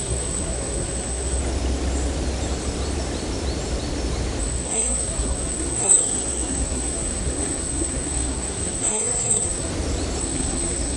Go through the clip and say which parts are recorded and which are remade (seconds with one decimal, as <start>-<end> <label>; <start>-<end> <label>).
0.0-1.4 remade; 1.4-4.4 recorded; 4.4-9.7 remade; 9.7-10.2 recorded; 10.2-11.0 remade